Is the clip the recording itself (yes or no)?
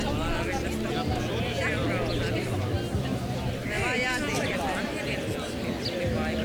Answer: yes